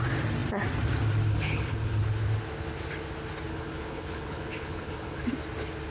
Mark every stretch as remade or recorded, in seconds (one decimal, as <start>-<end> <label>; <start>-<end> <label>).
0.0-1.3 recorded; 1.3-2.0 remade; 2.0-3.5 recorded; 3.5-5.2 remade; 5.2-5.9 recorded